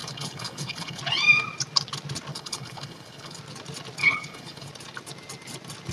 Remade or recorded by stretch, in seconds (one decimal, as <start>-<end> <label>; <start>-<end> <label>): 0.0-1.0 remade; 1.0-2.3 recorded; 2.3-3.4 remade; 3.4-4.0 recorded; 4.0-4.7 remade; 4.7-5.9 recorded